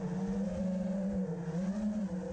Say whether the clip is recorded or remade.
recorded